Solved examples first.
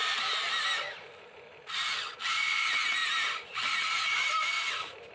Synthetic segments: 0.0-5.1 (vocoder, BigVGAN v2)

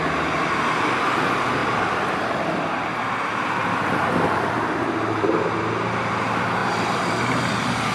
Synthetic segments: 1.6-2.3 (vocoder, BigVGAN v2); 3.6-4.7; 6.6-7.4